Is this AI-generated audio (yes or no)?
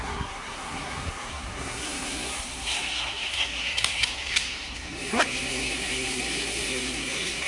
yes